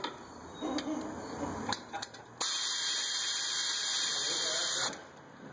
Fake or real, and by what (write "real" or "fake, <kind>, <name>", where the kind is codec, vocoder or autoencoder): real